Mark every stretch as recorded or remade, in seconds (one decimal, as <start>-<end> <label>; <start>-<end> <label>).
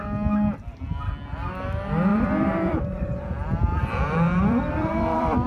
0.0-2.1 recorded; 2.1-5.5 remade